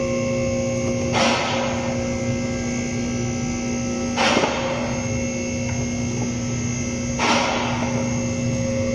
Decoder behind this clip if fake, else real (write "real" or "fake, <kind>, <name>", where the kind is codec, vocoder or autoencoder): real